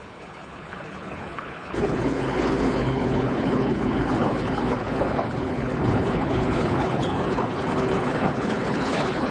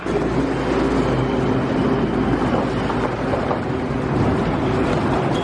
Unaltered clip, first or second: second